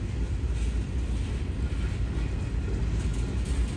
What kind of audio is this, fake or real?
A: real